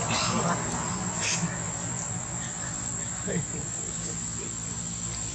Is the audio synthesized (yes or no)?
no